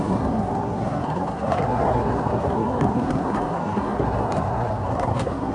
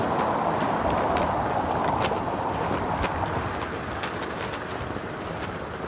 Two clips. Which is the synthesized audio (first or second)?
first